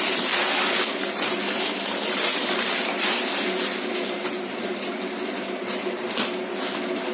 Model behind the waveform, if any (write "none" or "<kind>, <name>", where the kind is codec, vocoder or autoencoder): none